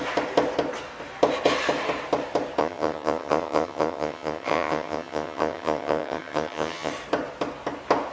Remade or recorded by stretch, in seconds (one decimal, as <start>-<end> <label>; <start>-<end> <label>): 0.0-2.6 recorded; 2.6-6.9 remade; 6.9-8.1 recorded

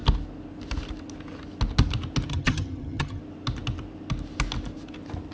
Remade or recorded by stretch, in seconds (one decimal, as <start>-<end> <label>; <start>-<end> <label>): 0.0-2.3 recorded; 2.3-3.2 remade; 3.2-5.3 recorded

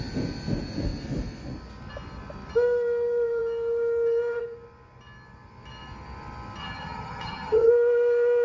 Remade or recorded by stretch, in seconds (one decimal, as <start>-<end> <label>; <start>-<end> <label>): 0.0-6.6 recorded; 6.6-7.7 remade; 7.7-8.4 recorded

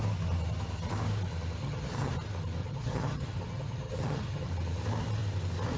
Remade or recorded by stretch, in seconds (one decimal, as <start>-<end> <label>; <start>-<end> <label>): 0.0-1.6 recorded; 1.6-2.1 remade; 2.1-2.6 recorded; 2.6-4.5 remade; 4.5-5.8 recorded

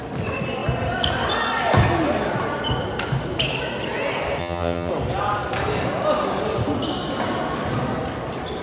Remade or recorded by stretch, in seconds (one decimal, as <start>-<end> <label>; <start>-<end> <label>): 0.0-4.4 recorded; 4.4-4.9 remade; 4.9-8.6 recorded

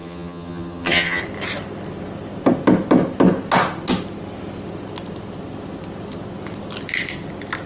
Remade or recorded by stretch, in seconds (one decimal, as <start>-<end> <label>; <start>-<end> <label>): 0.0-1.2 remade; 1.2-7.7 recorded